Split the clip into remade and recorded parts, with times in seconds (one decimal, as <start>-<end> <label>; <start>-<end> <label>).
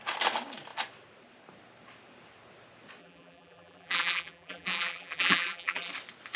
0.0-3.0 recorded; 3.0-5.9 remade; 5.9-6.4 recorded